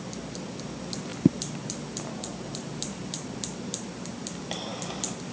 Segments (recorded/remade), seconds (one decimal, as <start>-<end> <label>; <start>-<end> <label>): 0.0-1.1 recorded; 1.1-4.2 remade; 4.2-4.7 recorded; 4.7-5.3 remade